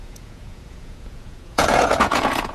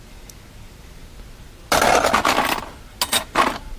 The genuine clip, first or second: second